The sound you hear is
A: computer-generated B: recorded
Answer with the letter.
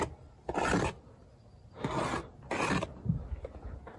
B